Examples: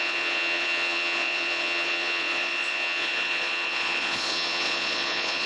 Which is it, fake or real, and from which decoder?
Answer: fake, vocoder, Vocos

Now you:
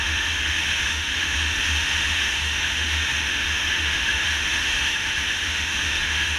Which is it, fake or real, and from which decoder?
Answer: fake, autoencoder, DAC-VAE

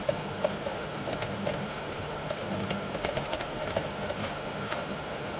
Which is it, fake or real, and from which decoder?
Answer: fake, autoencoder, DAC-VAE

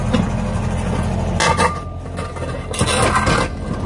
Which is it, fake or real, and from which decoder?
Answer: real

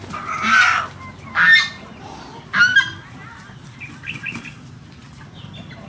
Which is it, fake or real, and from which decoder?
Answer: real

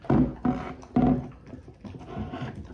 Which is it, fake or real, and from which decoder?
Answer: real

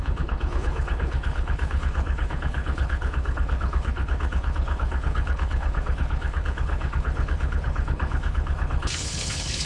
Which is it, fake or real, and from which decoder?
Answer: fake, codec, HILCodec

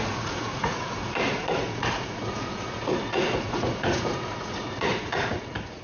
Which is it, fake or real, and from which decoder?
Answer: fake, vocoder, Vocos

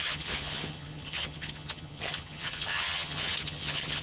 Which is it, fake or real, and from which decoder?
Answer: fake, vocoder, HiFi-GAN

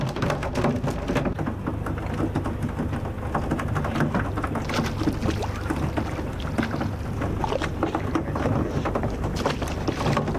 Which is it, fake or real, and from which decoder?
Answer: real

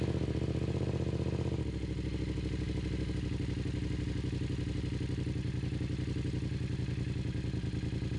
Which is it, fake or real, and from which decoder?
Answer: real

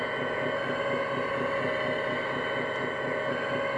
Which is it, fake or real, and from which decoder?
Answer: real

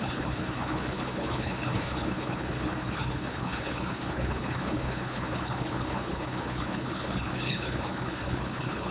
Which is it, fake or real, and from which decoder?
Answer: fake, codec, HILCodec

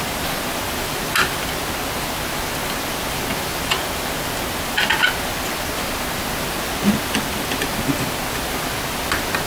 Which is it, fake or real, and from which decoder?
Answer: real